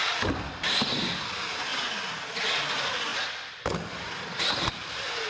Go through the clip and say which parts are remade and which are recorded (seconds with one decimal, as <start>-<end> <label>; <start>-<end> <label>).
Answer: 0.0-5.3 recorded